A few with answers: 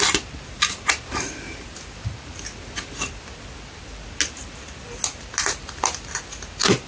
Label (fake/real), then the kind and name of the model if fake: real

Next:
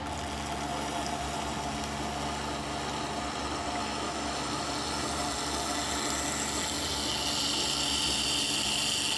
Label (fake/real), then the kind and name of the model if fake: real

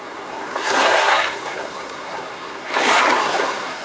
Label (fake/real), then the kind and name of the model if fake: fake, codec, SNAC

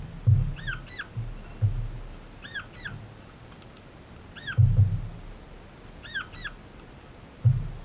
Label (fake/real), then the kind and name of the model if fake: real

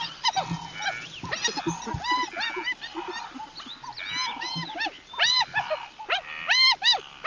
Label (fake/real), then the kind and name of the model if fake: real